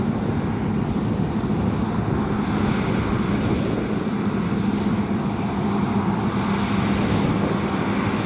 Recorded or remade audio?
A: recorded